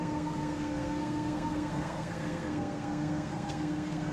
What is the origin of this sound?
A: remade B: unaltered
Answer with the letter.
A